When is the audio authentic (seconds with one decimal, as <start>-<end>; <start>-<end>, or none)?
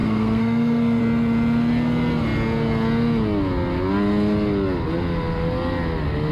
1.0-6.3